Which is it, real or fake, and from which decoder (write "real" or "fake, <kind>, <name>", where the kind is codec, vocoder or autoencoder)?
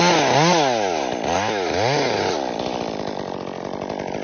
real